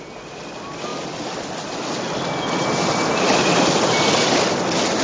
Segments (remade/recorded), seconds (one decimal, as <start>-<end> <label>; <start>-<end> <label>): 0.0-5.0 recorded